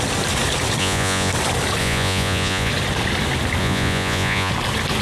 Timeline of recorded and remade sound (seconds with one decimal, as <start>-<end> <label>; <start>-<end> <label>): 0.0-0.8 recorded; 0.8-1.3 remade; 1.3-1.8 recorded; 1.8-2.7 remade; 2.7-3.6 recorded; 3.6-4.5 remade; 4.5-5.0 recorded